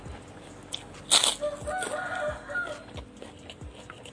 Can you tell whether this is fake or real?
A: real